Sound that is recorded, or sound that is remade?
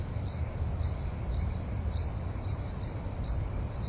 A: recorded